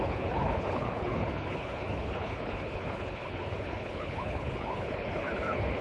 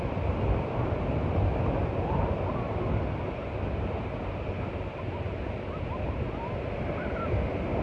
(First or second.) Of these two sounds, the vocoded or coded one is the first